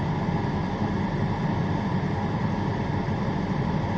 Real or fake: real